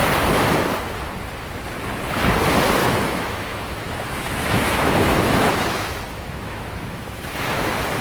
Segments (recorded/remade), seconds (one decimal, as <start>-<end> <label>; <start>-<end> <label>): 0.0-2.8 recorded; 2.8-7.6 remade; 7.6-8.0 recorded